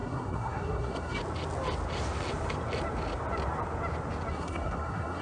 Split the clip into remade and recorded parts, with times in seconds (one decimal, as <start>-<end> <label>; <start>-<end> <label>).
0.0-1.2 remade; 1.2-4.3 recorded; 4.3-5.2 remade

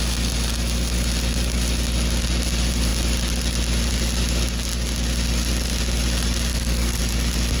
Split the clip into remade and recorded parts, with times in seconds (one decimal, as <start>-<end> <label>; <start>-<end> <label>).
0.0-6.5 recorded; 6.5-7.0 remade; 7.0-7.6 recorded

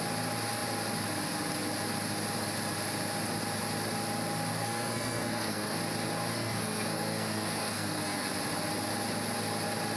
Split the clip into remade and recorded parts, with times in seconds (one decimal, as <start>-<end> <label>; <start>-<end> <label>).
0.0-4.5 recorded; 4.5-5.8 remade; 5.8-6.3 recorded; 6.3-8.3 remade; 8.3-10.0 recorded